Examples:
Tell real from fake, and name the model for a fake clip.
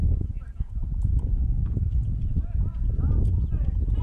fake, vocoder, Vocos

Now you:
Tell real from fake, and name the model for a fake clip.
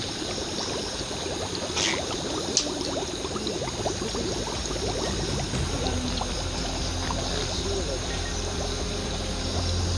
real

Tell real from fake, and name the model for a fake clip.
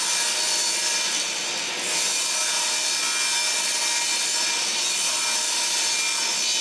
real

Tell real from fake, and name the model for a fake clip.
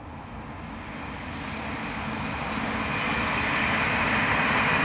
real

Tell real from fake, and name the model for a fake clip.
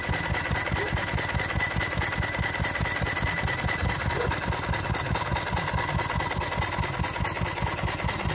real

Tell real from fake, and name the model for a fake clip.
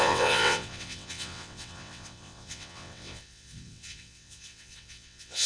fake, vocoder, WaveNeXt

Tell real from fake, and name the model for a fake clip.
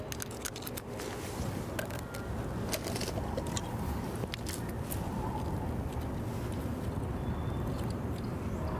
real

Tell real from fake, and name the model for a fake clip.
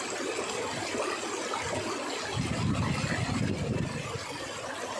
real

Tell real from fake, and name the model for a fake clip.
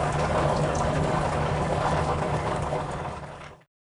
fake, codec, DAC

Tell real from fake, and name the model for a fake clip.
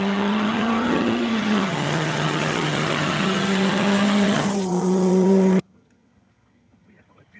fake, vocoder, HiFi-GAN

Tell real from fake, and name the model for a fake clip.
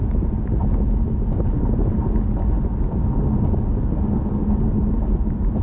real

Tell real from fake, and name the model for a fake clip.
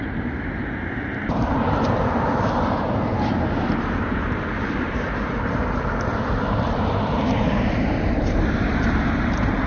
fake, vocoder, BigVGAN v2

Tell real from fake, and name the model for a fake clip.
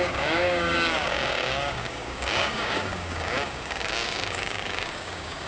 fake, codec, DAC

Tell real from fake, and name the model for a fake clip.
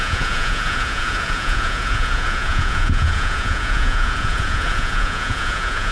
fake, vocoder, Vocos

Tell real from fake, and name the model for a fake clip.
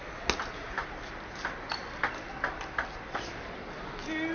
real